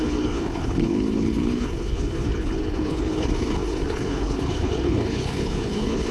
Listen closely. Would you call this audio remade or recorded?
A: remade